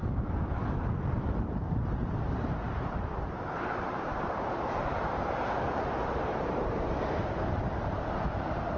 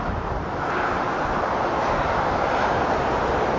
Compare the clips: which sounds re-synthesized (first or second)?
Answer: first